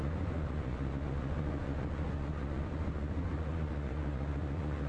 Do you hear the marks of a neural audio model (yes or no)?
yes